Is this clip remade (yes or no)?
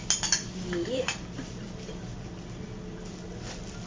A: no